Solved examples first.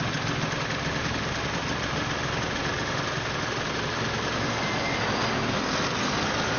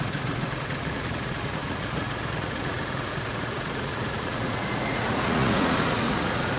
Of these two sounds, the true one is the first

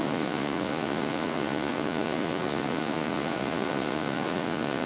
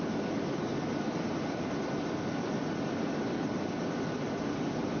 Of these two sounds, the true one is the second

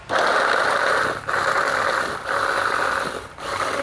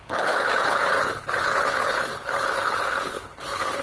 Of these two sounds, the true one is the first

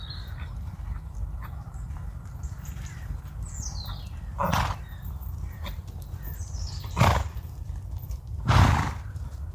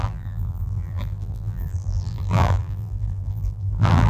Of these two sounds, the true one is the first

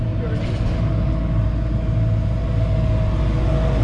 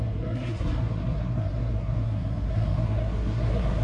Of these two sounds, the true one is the first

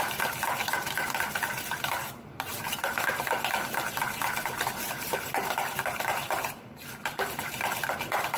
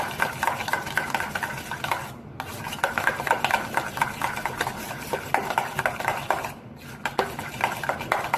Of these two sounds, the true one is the second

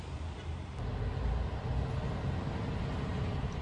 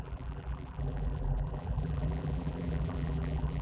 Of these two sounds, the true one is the first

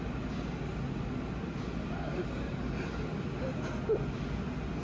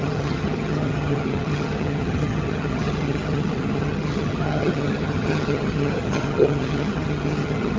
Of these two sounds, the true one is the first